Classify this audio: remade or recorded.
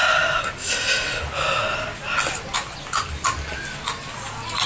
recorded